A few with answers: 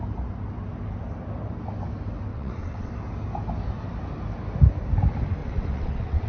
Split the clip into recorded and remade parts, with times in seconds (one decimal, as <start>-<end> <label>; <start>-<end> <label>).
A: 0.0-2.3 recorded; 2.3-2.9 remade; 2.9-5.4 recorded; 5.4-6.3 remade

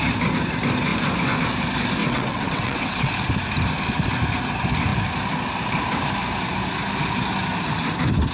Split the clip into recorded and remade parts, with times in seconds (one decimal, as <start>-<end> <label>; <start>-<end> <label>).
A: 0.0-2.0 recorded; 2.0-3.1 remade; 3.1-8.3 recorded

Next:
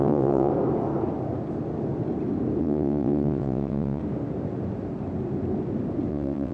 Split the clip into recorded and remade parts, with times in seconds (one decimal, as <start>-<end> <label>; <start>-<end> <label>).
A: 0.0-0.5 remade; 0.5-2.6 recorded; 2.6-4.0 remade; 4.0-6.1 recorded; 6.1-6.5 remade

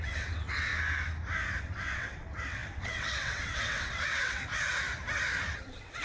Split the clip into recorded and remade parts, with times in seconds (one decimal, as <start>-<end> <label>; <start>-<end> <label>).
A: 0.0-0.7 remade; 0.7-1.6 recorded; 1.6-4.5 remade; 4.5-5.5 recorded; 5.5-6.0 remade

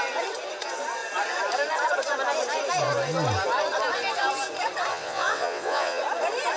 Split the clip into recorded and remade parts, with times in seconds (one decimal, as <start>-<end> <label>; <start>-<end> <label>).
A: 0.0-4.9 recorded; 4.9-6.0 remade; 6.0-6.6 recorded

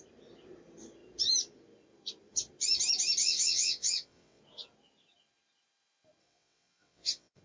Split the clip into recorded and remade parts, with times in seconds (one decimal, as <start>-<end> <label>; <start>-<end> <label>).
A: 0.0-3.2 recorded; 3.2-4.4 remade; 4.4-6.2 recorded; 6.2-7.4 remade

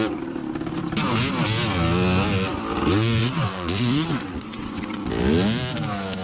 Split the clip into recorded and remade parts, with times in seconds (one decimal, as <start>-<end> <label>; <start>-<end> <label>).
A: 0.0-3.2 recorded; 3.2-5.1 remade; 5.1-6.2 recorded